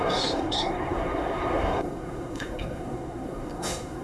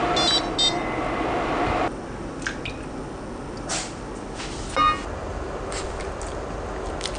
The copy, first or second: first